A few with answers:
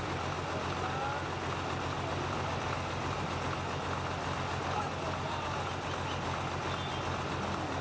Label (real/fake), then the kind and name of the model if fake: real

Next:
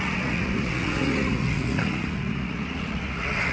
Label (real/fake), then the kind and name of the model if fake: fake, vocoder, Vocos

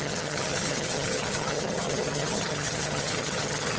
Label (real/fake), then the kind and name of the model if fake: fake, vocoder, HiFi-GAN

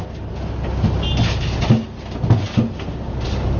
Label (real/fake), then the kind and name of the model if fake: real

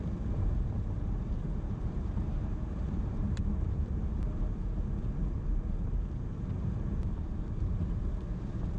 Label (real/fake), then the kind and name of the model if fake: fake, vocoder, BigVGAN v2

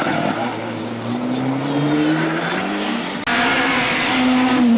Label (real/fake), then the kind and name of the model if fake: real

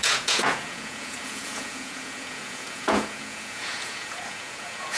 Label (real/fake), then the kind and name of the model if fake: fake, vocoder, Vocos